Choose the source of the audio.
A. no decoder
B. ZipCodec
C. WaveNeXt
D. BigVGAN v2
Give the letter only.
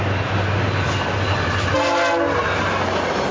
A